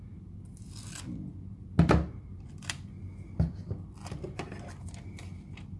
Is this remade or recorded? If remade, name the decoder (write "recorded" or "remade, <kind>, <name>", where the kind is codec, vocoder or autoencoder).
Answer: recorded